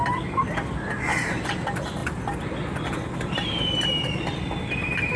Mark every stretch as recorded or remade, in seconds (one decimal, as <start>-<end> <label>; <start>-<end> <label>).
0.0-5.2 recorded